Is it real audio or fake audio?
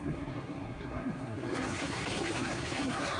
fake